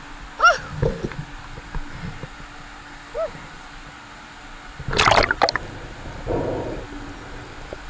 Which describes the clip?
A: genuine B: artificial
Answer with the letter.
A